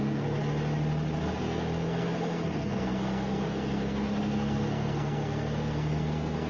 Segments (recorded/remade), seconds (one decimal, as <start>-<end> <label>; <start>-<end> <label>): 0.0-0.4 remade; 0.4-1.4 recorded; 1.4-6.5 remade